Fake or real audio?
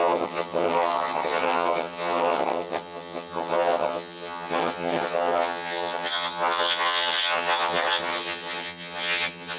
fake